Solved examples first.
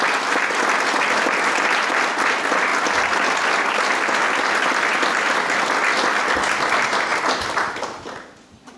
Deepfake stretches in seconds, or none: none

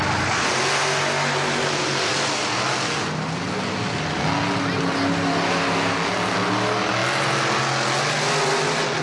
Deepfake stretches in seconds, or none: none

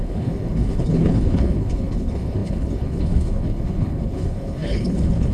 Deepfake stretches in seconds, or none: 0.0-5.3 (codec, HILCodec)

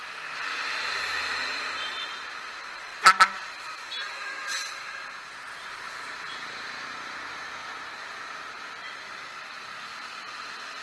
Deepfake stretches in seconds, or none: none

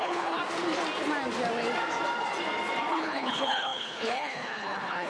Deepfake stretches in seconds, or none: 0.0-0.4 (codec, HILCodec); 2.9-5.1

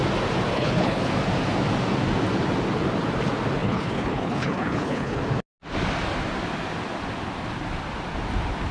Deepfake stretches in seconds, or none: 0.5-1.1 (codec, HILCodec); 3.6-5.2

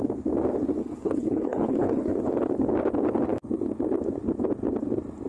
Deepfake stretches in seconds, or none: 0.8-2.2 (codec, HILCodec)

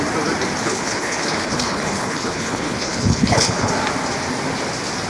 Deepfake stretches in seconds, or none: 0.6-3.7 (codec, HILCodec)